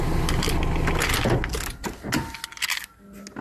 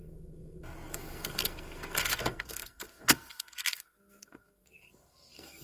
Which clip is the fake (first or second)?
second